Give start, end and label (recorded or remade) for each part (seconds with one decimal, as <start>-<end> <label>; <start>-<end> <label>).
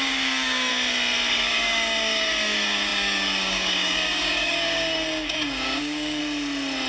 0.0-0.7 remade; 0.7-1.3 recorded; 1.3-6.2 remade; 6.2-6.9 recorded